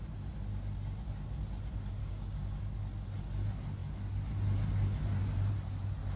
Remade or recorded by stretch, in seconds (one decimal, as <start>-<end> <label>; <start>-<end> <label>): 0.0-2.0 recorded; 2.0-2.6 remade; 2.6-6.2 recorded